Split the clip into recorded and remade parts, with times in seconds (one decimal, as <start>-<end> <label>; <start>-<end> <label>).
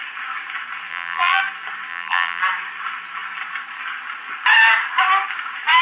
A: 0.0-0.9 recorded; 0.9-1.4 remade; 1.4-1.9 recorded; 1.9-2.4 remade; 2.4-5.8 recorded